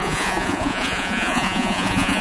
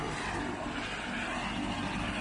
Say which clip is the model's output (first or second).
first